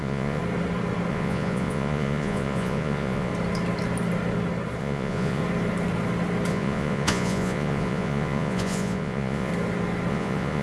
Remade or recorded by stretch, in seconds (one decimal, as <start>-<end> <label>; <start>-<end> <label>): 0.0-0.4 remade; 0.4-1.1 recorded; 1.1-3.3 remade; 3.3-4.8 recorded; 4.8-5.4 remade; 5.4-6.5 recorded; 6.5-9.5 remade; 9.5-10.1 recorded; 10.1-10.6 remade